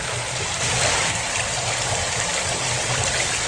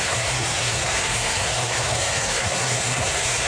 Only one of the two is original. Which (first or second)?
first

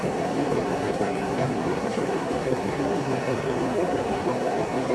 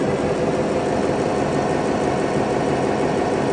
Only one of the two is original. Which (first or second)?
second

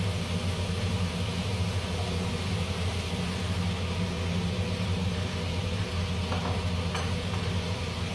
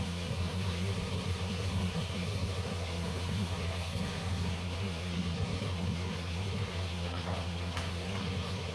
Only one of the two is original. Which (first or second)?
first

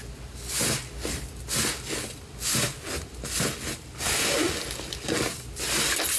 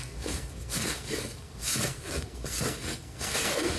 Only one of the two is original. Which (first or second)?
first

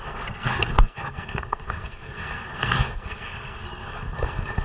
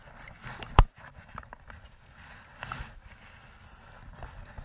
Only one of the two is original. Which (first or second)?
second